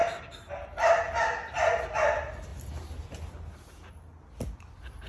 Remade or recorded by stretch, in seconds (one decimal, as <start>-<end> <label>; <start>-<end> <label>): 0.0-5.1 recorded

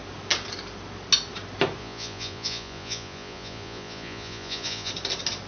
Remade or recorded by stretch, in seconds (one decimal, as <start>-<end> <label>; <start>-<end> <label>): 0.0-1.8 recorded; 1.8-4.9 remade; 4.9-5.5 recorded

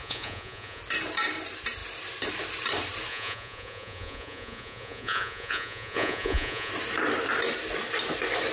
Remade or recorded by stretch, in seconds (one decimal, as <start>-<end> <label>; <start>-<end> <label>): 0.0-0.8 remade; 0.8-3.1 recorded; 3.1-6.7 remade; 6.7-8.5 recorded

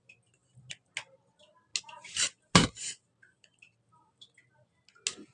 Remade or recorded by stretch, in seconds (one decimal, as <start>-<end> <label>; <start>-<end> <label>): 0.0-5.3 recorded

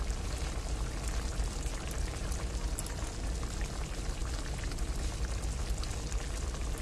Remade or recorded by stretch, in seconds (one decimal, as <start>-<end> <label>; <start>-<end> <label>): 0.0-6.8 recorded